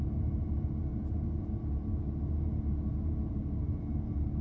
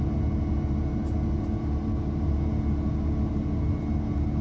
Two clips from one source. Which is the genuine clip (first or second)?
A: second